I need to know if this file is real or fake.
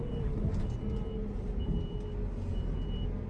real